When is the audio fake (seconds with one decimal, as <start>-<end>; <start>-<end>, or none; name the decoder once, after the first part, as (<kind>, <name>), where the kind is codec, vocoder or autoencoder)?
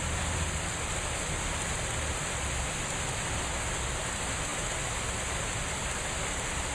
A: none